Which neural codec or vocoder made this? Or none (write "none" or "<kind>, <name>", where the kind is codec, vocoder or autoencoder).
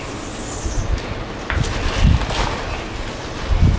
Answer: none